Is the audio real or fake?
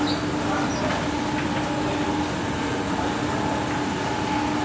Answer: real